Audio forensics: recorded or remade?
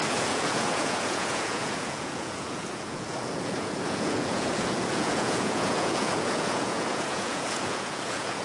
remade